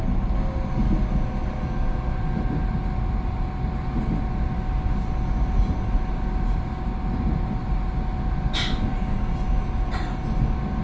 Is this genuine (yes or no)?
yes